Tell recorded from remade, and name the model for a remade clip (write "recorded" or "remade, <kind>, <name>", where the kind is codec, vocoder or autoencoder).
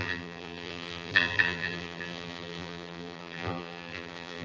remade, vocoder, BigVGAN v2